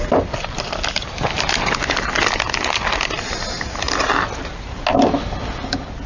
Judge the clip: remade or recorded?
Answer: recorded